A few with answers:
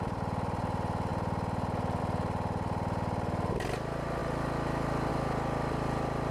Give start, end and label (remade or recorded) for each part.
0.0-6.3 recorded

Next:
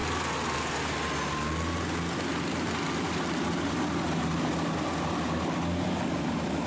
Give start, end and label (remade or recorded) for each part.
0.0-6.7 recorded

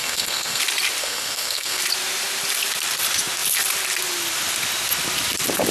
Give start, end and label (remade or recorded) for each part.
0.0-0.6 remade; 0.6-1.0 recorded; 1.0-1.8 remade; 1.8-5.7 recorded

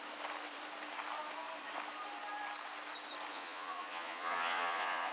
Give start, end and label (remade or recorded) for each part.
0.0-3.3 recorded; 3.3-5.1 remade

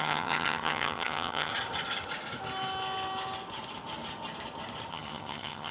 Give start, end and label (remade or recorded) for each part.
0.0-1.5 remade; 1.5-4.9 recorded; 4.9-5.7 remade

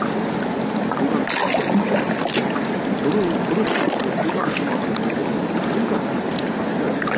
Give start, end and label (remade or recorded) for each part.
0.0-7.2 recorded

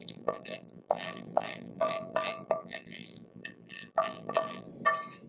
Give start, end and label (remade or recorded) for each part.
0.0-4.7 remade; 4.7-5.3 recorded